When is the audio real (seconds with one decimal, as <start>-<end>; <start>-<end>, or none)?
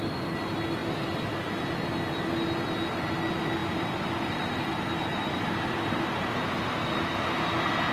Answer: 0.0-0.8; 1.5-3.6; 6.2-7.9